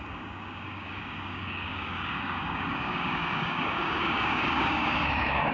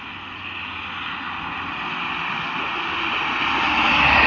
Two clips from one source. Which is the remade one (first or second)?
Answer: first